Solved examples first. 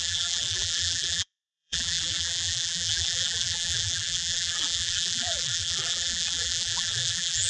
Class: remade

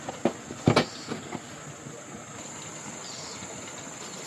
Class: recorded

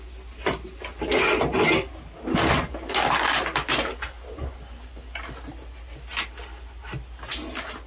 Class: recorded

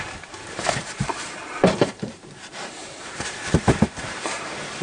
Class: remade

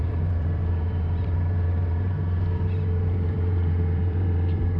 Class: remade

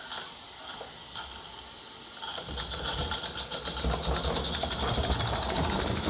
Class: recorded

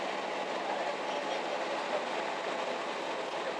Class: recorded